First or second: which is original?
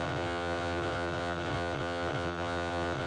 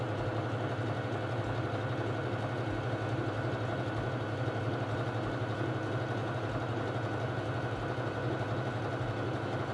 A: second